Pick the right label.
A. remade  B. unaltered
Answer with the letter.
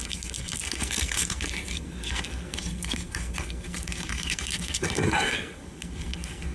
A